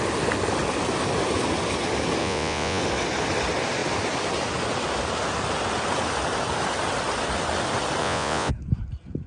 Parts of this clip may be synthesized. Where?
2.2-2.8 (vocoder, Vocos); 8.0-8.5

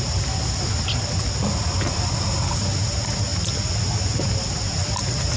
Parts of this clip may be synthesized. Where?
none

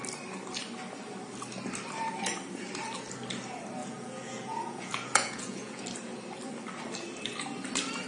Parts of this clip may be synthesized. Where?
3.8-5.8 (vocoder, Vocos)

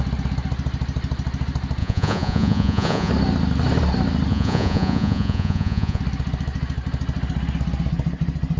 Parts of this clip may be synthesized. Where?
1.8-3.1 (vocoder, Vocos); 4.3-6.0

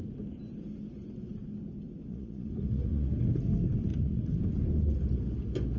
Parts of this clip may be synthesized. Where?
2.1-3.1 (vocoder, Vocos); 3.9-4.4